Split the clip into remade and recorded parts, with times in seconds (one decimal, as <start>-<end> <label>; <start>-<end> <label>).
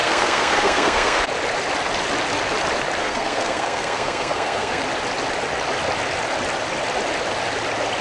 0.0-1.2 remade; 1.2-3.0 recorded; 3.0-4.8 remade; 4.8-8.0 recorded